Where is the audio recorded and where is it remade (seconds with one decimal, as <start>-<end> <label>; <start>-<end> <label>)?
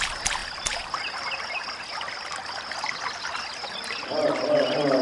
0.0-5.0 recorded